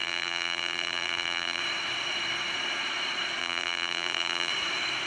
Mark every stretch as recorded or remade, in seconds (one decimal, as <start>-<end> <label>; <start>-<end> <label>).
0.0-1.6 remade; 1.6-3.4 recorded; 3.4-4.5 remade; 4.5-5.1 recorded